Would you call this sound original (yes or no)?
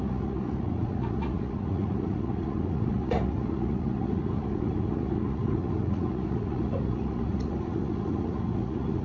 no